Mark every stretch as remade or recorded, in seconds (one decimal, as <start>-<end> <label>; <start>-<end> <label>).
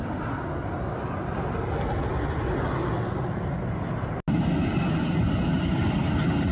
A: 0.0-6.5 recorded